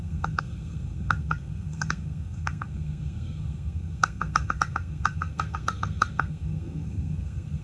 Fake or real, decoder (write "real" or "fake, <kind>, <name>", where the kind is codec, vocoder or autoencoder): fake, codec, SNAC